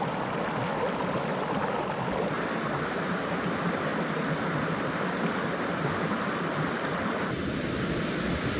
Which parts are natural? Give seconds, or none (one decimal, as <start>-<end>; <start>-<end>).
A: 0.0-3.9; 4.9-8.6